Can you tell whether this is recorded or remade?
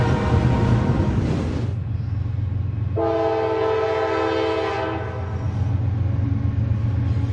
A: recorded